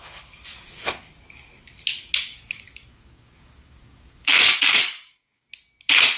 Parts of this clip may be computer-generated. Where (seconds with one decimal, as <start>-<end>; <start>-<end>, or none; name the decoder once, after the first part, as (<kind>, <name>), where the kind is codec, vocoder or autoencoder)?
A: 2.3-5.5 (codec, DAC)